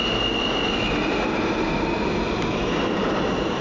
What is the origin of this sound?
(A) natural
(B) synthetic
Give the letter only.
A